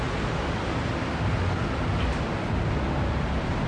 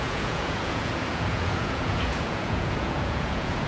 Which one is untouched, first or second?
first